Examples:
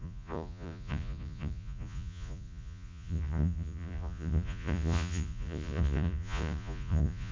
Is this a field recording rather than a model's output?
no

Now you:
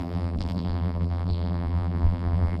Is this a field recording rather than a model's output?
no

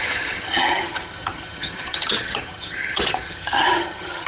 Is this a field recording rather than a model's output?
no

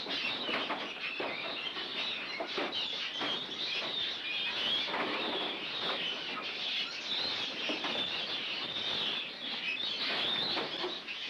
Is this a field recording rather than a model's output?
yes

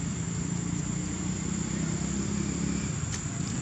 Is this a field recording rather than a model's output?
yes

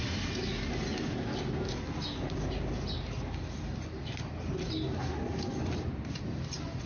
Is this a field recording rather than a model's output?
yes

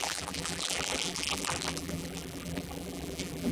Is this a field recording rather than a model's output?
no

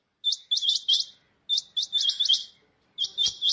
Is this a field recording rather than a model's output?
yes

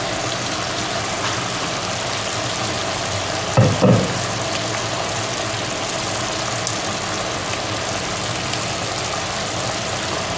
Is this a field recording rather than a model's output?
yes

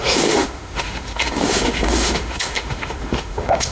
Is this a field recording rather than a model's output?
no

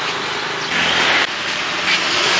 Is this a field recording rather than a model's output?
yes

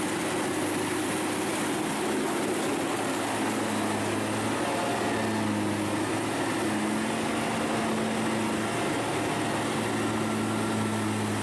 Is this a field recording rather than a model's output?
yes